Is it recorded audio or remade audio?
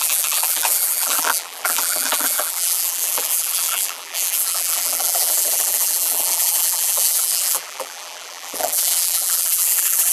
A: remade